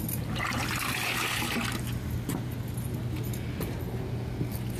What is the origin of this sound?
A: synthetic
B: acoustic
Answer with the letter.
B